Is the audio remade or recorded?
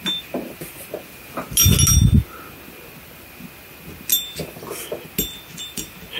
recorded